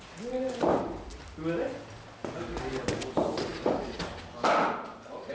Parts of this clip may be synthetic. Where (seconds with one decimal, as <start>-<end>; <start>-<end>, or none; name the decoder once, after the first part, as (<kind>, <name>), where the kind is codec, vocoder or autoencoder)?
none